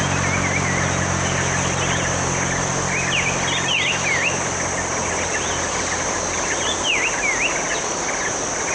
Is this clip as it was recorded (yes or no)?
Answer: yes